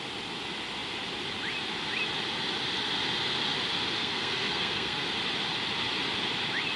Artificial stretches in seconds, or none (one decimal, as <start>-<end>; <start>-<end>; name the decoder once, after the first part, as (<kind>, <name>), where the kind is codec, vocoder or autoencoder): 4.0-5.1 (codec, SNAC)